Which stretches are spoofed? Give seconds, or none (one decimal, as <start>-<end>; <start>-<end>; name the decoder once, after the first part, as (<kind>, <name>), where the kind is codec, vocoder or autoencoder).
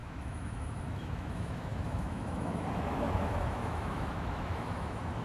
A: 0.0-5.2 (autoencoder, DAC-VAE)